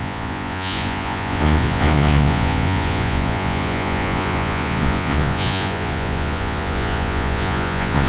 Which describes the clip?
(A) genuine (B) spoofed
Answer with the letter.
B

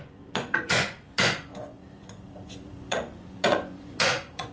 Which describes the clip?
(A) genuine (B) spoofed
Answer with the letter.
B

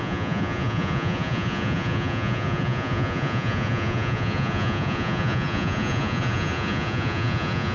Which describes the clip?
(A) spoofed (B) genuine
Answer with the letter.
A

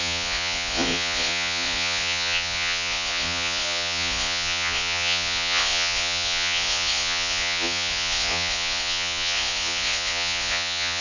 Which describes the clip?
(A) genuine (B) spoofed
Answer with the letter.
B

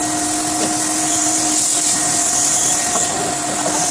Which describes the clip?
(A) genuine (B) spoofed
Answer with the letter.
A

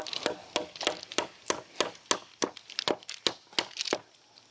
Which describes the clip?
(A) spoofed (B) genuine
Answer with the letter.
B